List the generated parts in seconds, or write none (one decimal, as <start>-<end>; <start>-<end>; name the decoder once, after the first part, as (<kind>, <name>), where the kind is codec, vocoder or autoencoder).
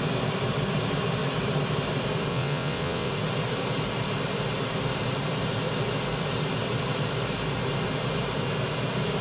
2.3-3.1 (vocoder, WaveNeXt)